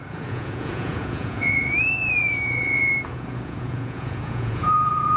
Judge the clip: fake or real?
fake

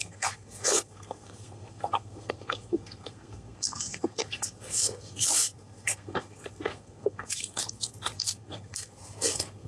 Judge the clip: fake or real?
fake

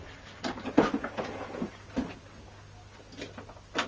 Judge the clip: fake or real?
real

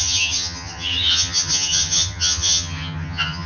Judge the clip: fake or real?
fake